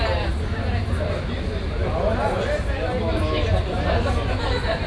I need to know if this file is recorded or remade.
recorded